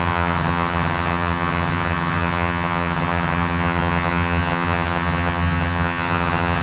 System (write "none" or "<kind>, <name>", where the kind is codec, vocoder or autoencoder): vocoder, HiFi-GAN